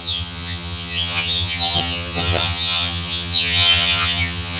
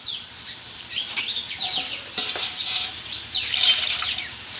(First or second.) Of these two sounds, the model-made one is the first